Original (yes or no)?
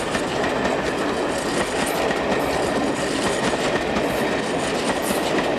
yes